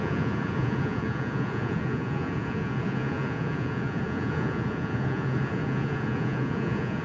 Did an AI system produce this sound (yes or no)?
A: yes